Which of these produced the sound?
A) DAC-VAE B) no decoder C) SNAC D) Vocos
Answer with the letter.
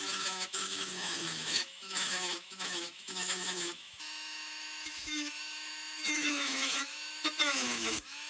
A